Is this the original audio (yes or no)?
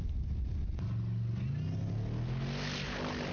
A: yes